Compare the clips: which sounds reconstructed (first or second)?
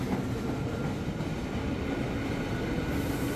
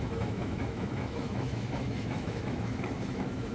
second